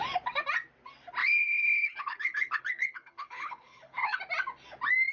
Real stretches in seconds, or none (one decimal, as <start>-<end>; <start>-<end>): 0.0-1.2; 4.2-5.1